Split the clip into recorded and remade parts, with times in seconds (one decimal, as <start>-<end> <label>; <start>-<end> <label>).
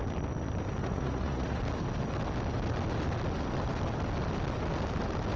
0.0-0.8 recorded; 0.8-1.6 remade; 1.6-5.4 recorded